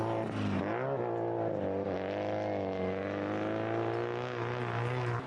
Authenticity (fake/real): real